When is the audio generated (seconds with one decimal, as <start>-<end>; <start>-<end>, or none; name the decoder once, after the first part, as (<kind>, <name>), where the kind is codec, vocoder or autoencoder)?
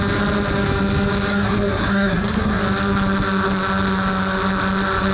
1.3-2.6 (codec, SNAC)